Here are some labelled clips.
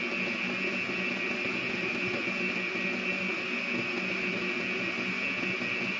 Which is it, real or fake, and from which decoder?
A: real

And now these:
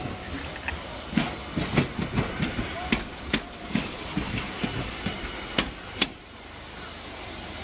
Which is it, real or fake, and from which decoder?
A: real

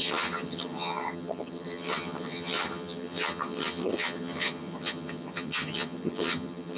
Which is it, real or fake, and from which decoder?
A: fake, vocoder, HiFi-GAN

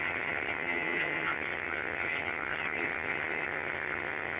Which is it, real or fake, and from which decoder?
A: fake, vocoder, HiFi-GAN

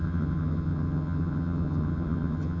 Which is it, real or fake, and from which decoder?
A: fake, vocoder, HiFi-GAN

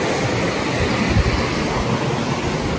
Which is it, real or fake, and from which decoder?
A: real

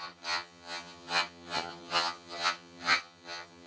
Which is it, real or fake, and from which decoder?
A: fake, vocoder, HiFi-GAN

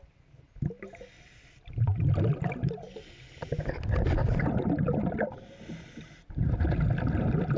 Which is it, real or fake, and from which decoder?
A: real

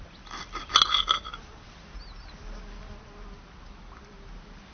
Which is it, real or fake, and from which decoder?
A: real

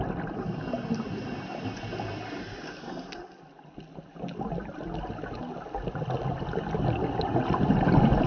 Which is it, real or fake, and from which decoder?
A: real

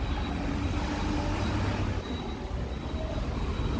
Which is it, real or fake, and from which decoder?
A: real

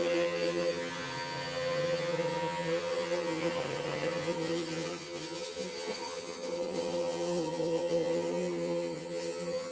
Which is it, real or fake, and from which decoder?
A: fake, vocoder, HiFi-GAN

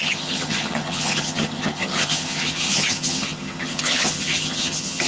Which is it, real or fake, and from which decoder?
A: fake, vocoder, HiFi-GAN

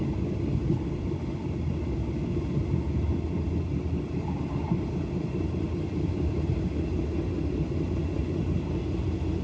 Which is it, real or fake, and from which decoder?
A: real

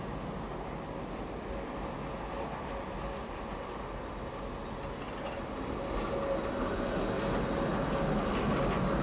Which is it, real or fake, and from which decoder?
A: real